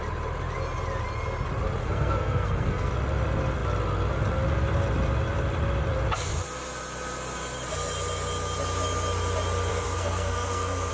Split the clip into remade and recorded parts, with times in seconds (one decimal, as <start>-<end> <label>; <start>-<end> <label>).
0.0-1.8 recorded; 1.8-2.9 remade; 2.9-9.7 recorded; 9.7-10.9 remade

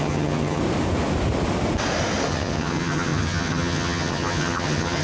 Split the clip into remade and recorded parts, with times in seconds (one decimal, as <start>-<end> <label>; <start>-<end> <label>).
0.0-0.6 remade; 0.6-2.3 recorded; 2.3-5.0 remade

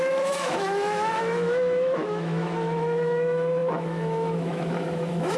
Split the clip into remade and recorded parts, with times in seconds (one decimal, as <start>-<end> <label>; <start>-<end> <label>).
0.0-5.4 remade